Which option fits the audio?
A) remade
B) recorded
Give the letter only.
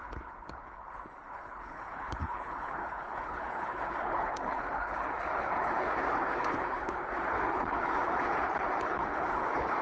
A